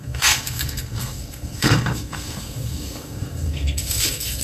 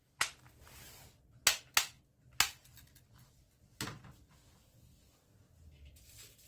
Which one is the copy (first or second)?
first